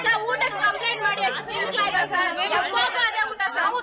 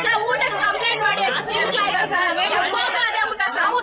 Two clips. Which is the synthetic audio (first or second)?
second